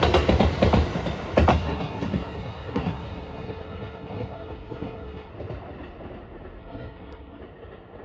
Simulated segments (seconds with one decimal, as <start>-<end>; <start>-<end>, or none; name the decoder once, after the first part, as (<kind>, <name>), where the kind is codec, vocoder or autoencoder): 1.5-5.3 (codec, SNAC); 6.6-7.4